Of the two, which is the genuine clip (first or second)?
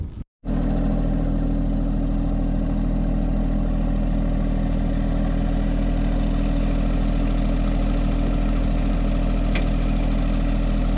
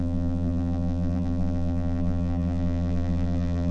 first